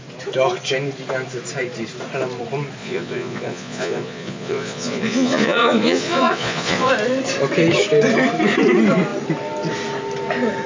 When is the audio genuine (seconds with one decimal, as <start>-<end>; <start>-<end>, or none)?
0.0-2.8; 6.9-10.7

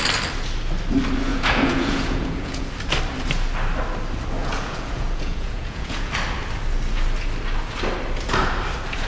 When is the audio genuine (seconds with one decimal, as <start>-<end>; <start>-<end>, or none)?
0.0-1.3; 2.7-4.4; 6.1-9.1

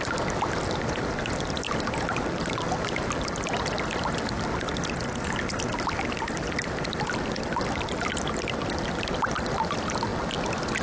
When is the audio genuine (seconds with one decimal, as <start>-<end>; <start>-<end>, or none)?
0.0-10.8